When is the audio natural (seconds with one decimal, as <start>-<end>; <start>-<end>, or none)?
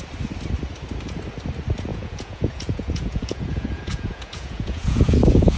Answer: 0.0-1.9